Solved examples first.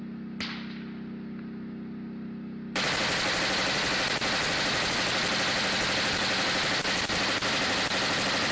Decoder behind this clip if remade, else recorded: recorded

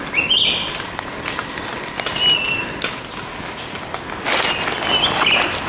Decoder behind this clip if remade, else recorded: recorded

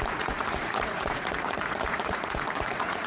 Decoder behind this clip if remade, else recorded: remade, vocoder, Vocos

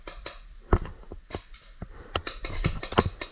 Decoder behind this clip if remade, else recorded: recorded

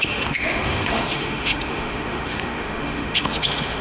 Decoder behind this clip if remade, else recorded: remade, autoencoder, DAC-VAE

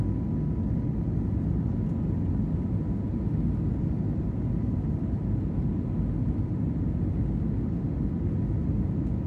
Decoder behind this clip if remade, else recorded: recorded